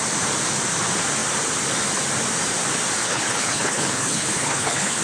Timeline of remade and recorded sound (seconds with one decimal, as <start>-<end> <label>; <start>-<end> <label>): 0.0-3.0 recorded; 3.0-5.0 remade